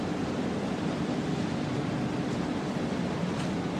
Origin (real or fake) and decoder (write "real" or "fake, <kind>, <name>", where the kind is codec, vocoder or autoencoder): real